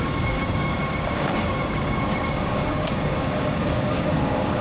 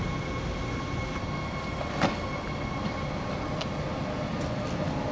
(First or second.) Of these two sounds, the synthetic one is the first